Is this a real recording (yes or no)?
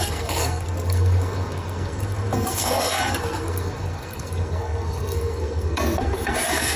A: no